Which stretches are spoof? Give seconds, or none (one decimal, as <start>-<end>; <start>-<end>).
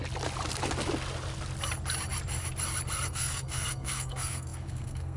3.1-5.2